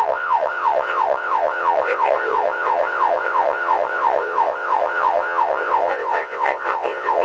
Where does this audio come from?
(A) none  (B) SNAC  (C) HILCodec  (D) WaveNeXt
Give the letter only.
D